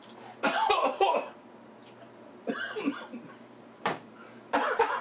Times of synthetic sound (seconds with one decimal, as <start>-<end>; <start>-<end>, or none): 1.8-5.0